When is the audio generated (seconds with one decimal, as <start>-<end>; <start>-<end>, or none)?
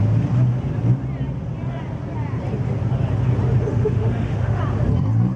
3.7-4.6